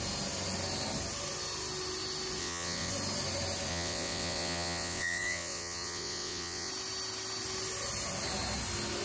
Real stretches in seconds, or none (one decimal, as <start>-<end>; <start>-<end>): 0.0-2.4; 2.9-3.7; 6.7-9.0

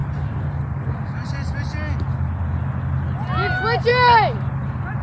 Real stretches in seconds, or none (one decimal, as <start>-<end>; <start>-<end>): 1.8-5.0

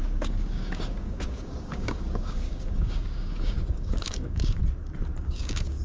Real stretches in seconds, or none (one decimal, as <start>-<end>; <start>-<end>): 4.6-5.2

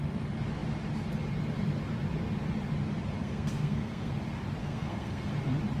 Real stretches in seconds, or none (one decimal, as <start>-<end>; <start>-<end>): 0.0-3.2; 4.1-4.6; 5.3-5.8

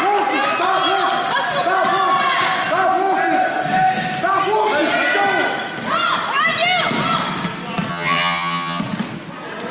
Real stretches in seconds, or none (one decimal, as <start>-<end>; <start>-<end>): 0.0-7.9; 8.8-9.7